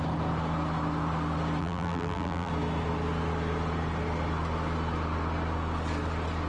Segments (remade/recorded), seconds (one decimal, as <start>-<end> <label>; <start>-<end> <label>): 0.0-1.6 recorded; 1.6-2.5 remade; 2.5-6.5 recorded